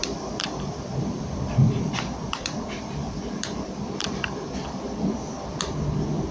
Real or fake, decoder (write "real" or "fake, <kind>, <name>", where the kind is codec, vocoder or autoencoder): fake, vocoder, BigVGAN v2